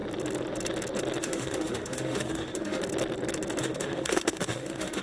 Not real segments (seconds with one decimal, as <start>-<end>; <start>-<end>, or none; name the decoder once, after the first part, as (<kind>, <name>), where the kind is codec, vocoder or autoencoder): 1.2-2.8 (autoencoder, DAC-VAE); 3.6-5.0